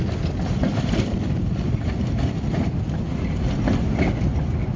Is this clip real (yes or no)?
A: yes